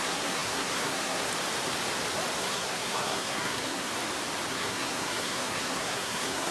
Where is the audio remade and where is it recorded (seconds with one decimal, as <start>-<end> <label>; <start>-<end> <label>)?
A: 0.0-1.3 remade; 1.3-2.4 recorded; 2.4-3.9 remade; 3.9-4.5 recorded; 4.5-6.5 remade